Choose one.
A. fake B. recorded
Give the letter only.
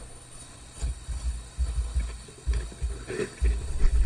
A